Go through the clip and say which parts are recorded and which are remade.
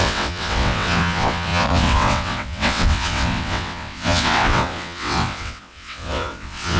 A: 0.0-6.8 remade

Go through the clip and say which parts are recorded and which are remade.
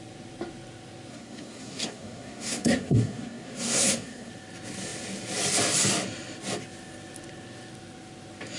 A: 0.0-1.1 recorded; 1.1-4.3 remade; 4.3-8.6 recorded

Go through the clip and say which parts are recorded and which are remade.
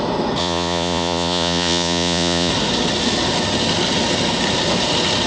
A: 0.0-0.4 recorded; 0.4-2.5 remade; 2.5-5.3 recorded